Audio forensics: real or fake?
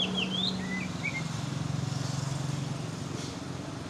real